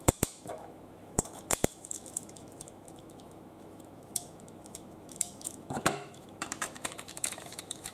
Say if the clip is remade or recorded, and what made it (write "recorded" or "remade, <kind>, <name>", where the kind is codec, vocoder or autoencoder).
remade, autoencoder, DAC-VAE